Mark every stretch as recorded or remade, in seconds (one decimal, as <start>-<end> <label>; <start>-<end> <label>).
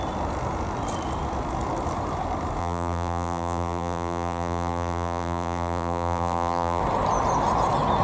0.0-2.6 recorded; 2.6-6.8 remade; 6.8-8.0 recorded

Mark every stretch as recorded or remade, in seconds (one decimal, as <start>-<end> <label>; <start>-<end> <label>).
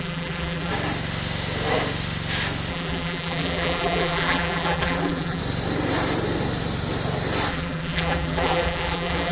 0.0-0.7 remade; 0.7-2.7 recorded; 2.7-5.4 remade; 5.4-7.5 recorded; 7.5-9.3 remade